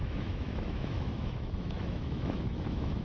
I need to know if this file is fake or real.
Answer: fake